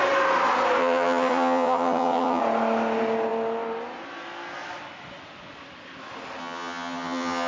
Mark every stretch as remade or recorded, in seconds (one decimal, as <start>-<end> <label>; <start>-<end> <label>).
0.0-0.8 recorded; 0.8-2.4 remade; 2.4-6.4 recorded; 6.4-7.5 remade